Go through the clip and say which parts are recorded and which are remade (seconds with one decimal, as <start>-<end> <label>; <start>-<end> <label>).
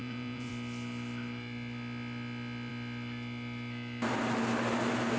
0.0-0.5 remade; 0.5-5.2 recorded